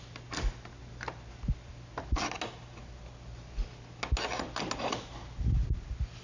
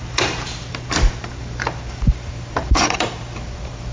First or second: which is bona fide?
first